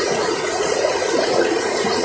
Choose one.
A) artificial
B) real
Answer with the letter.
A